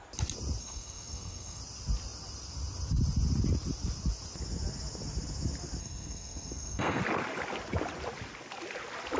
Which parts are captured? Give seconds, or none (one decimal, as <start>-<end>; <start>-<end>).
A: 0.0-0.6; 1.6-5.8; 7.0-9.2